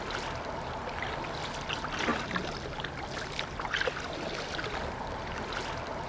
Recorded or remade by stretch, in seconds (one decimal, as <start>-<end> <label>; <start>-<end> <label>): 0.0-6.1 recorded